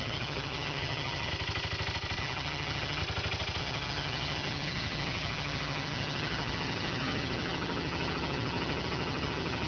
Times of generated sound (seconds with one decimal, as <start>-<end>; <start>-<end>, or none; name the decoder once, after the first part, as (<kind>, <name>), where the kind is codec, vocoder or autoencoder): 0.0-1.3 (vocoder, HiFi-GAN); 2.2-3.0; 3.6-9.7